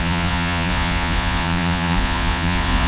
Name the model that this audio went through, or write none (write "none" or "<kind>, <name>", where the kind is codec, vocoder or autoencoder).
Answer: vocoder, Vocos